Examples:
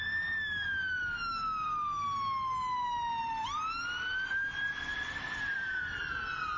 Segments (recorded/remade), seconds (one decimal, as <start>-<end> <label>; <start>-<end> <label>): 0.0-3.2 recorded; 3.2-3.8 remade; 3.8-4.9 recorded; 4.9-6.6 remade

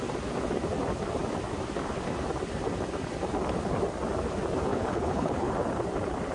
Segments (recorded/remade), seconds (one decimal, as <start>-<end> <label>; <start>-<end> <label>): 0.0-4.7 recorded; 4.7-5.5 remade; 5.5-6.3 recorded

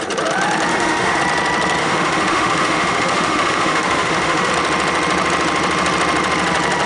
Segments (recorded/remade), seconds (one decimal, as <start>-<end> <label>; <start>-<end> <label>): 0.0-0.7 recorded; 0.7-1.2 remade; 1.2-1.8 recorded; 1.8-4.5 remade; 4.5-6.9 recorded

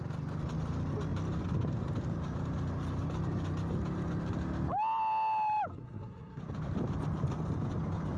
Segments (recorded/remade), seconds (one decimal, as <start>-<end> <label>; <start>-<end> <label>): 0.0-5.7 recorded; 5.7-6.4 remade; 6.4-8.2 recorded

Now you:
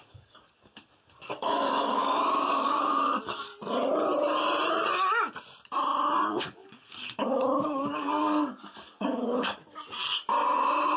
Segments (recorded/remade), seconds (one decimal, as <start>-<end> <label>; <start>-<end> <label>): 0.0-3.5 remade; 3.5-6.3 recorded; 6.3-9.6 remade; 9.6-11.0 recorded

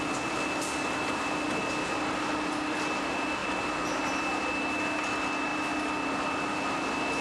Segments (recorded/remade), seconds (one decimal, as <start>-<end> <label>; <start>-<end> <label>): 0.0-7.2 recorded